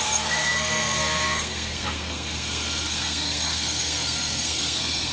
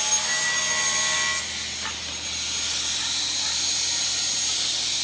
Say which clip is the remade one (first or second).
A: first